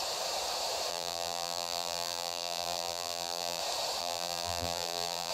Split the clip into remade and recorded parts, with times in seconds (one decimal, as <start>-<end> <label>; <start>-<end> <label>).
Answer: 0.0-0.9 recorded; 0.9-3.6 remade; 3.6-4.0 recorded; 4.0-5.3 remade

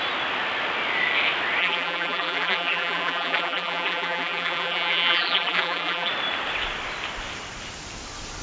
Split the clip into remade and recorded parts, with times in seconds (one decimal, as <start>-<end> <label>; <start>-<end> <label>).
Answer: 0.0-1.6 recorded; 1.6-6.1 remade; 6.1-8.4 recorded

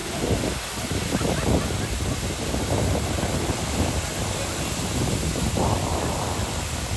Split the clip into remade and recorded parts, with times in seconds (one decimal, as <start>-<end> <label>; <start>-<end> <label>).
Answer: 0.0-5.9 recorded; 5.9-7.0 remade

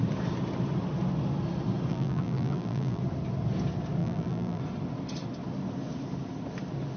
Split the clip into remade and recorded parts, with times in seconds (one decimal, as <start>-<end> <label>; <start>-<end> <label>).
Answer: 0.0-1.9 recorded; 1.9-3.0 remade; 3.0-4.0 recorded; 4.0-4.6 remade; 4.6-7.0 recorded